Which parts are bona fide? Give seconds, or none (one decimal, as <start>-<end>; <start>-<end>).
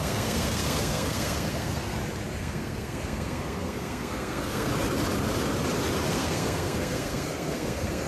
1.9-2.4; 4.7-6.1